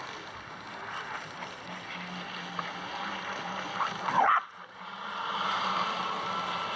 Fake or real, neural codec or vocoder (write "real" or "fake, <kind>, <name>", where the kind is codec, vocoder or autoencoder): real